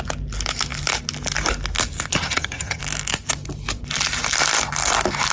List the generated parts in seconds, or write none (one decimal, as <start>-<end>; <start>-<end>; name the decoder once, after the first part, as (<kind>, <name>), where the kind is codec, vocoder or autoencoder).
2.2-2.8 (vocoder, HiFi-GAN)